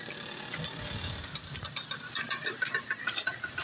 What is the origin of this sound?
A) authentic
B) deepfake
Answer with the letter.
A